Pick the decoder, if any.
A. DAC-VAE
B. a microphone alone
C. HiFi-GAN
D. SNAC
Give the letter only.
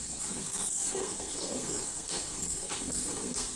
D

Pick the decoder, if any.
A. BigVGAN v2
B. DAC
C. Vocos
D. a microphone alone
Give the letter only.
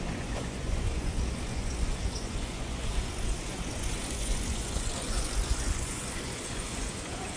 C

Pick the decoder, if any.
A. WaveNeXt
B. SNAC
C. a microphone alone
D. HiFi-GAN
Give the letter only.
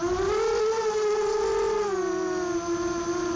C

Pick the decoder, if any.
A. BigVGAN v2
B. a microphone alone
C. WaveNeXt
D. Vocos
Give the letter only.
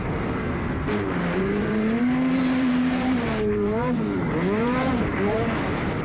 A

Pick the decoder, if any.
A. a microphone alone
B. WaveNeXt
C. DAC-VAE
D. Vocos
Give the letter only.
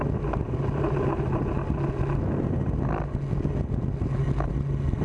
A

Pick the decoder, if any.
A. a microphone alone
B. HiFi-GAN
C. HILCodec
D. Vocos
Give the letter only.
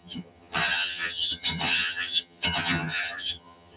B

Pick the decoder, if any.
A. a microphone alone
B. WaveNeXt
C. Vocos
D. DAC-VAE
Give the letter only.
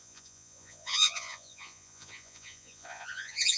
C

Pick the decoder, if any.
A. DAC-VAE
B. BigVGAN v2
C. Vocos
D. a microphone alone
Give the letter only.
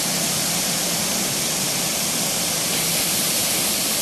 B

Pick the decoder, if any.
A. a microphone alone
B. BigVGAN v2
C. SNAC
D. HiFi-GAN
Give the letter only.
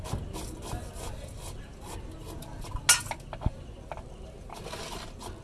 A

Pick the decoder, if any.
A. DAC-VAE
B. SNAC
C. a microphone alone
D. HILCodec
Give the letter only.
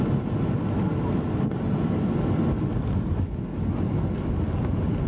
C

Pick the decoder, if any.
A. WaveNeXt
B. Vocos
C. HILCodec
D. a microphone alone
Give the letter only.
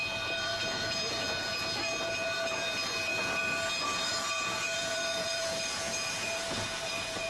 B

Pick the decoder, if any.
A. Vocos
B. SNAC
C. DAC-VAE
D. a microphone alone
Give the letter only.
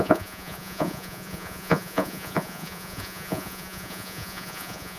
A